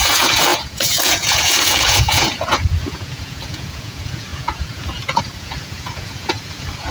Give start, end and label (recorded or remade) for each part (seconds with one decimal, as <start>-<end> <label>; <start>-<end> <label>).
0.0-6.9 remade